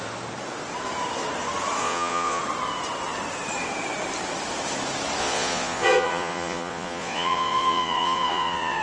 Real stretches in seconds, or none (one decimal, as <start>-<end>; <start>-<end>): 0.0-1.8; 2.4-5.2